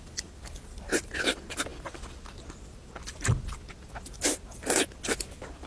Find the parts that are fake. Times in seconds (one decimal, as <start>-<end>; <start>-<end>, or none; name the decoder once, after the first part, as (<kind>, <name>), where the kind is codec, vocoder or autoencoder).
none